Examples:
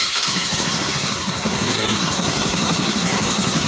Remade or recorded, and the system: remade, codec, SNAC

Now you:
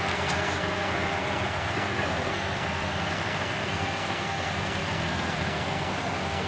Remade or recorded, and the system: remade, codec, SNAC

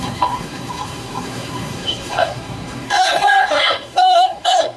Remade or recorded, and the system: remade, codec, SNAC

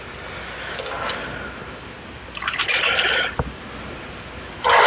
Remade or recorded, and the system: recorded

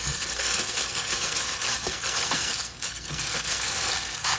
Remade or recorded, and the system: remade, codec, SNAC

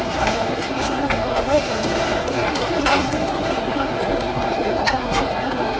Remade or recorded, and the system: remade, codec, SNAC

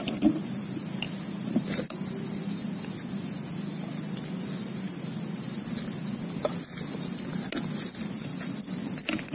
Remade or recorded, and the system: recorded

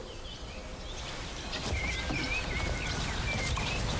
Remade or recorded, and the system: recorded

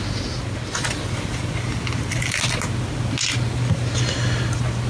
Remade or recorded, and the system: recorded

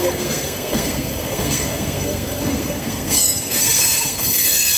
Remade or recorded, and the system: remade, codec, SNAC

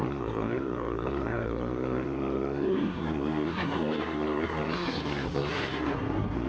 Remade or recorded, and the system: remade, codec, SNAC